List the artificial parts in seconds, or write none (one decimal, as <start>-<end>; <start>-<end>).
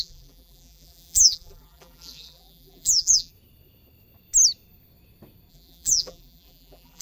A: 0.0-3.3; 5.5-7.0